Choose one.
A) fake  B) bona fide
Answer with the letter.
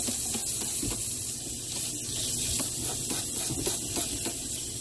B